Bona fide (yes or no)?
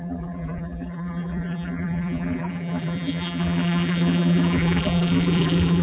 no